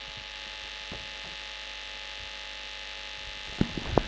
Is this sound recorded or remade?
recorded